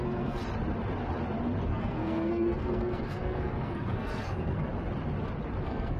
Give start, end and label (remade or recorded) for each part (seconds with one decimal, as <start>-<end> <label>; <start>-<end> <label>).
0.0-0.4 remade; 0.4-1.6 recorded; 1.6-4.7 remade; 4.7-5.6 recorded; 5.6-6.0 remade